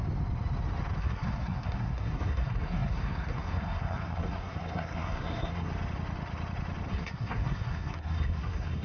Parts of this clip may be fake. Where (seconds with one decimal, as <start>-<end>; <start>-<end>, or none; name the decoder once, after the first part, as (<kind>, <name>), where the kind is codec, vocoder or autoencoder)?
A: 1.0-5.7 (codec, SNAC); 6.9-8.8